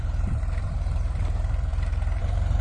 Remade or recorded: remade